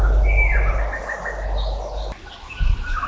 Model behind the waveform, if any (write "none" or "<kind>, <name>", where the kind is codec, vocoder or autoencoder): none